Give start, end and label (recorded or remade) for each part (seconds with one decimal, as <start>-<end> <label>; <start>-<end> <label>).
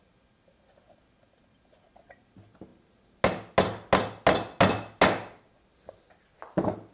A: 0.0-6.9 recorded